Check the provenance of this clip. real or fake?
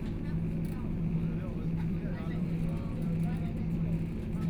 fake